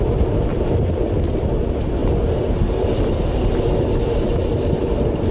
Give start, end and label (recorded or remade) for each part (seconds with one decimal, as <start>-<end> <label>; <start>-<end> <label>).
0.0-5.3 recorded